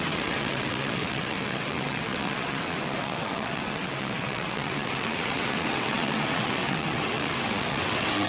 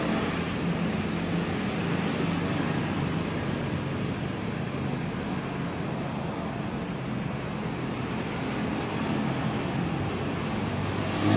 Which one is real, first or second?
second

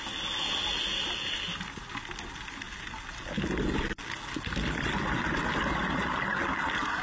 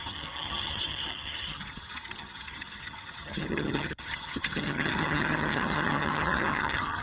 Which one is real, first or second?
first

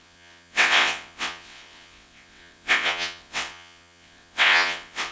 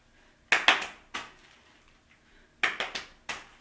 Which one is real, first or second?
second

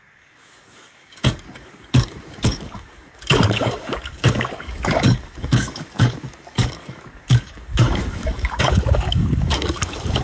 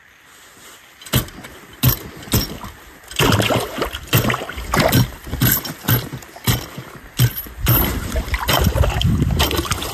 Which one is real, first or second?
second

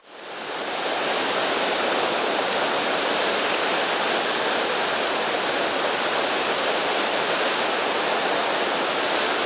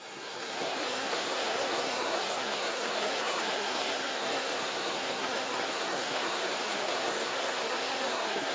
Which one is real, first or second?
first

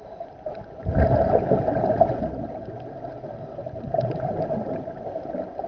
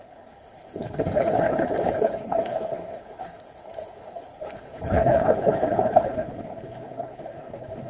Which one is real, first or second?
first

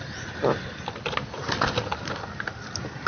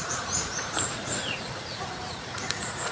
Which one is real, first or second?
first